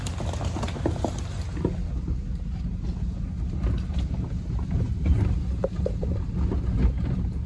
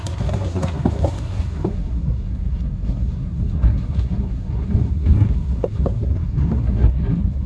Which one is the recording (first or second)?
first